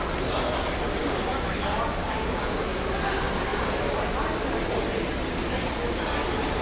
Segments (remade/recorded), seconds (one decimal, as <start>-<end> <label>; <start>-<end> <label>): 0.0-1.0 recorded; 1.0-1.5 remade; 1.5-2.0 recorded; 2.0-2.6 remade; 2.6-6.6 recorded